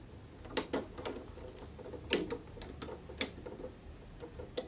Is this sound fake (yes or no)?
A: no